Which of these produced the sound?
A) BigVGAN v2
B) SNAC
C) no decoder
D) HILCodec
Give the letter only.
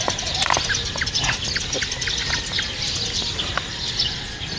C